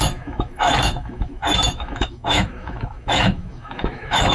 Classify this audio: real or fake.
fake